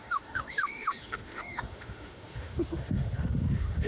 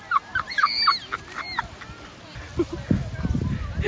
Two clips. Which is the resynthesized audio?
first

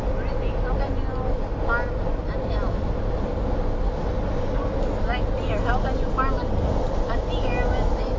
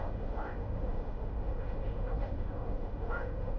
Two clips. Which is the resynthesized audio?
second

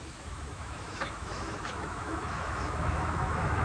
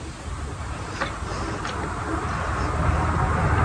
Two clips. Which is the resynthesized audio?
first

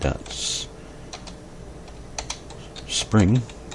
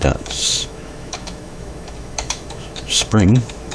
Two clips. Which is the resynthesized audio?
second